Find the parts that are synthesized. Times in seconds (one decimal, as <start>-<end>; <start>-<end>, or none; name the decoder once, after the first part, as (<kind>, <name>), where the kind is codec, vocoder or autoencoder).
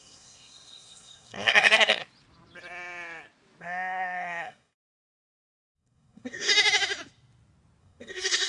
0.0-2.0 (codec, SNAC); 3.6-6.5; 7.8-8.5